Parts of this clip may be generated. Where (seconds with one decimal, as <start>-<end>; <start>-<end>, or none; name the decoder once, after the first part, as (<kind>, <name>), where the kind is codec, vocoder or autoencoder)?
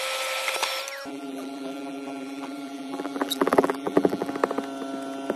1.1-4.3 (vocoder, BigVGAN v2)